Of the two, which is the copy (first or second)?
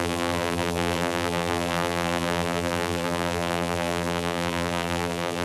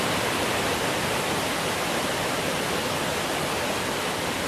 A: first